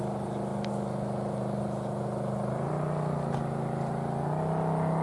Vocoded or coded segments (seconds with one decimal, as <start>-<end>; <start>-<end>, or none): none